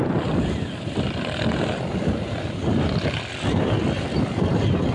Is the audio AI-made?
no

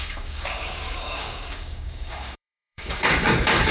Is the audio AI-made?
yes